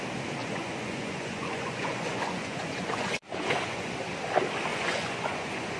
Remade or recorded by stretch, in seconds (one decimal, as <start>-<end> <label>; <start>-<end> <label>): 0.0-0.4 recorded; 0.4-3.9 remade; 3.9-4.7 recorded; 4.7-5.8 remade